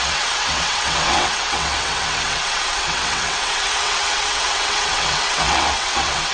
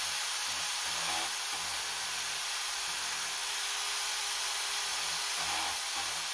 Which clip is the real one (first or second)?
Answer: second